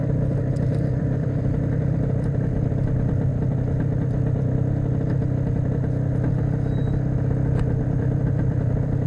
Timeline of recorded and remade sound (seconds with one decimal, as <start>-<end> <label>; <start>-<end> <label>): 0.0-3.3 remade; 3.3-7.8 recorded; 7.8-9.1 remade